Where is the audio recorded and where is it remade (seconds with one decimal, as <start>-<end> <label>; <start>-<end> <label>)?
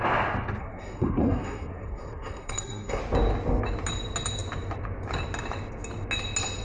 0.0-0.6 recorded; 0.6-3.0 remade; 3.0-6.6 recorded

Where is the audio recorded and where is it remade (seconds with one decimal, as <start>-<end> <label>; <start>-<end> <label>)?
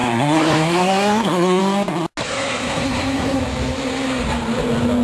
0.0-1.6 remade; 1.6-2.2 recorded; 2.2-3.4 remade; 3.4-5.0 recorded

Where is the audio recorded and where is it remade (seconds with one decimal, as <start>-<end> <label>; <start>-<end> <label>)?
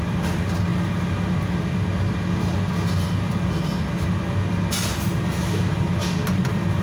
0.0-6.8 recorded